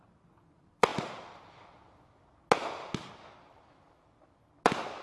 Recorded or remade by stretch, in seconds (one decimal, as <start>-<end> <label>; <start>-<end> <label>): 0.0-5.0 recorded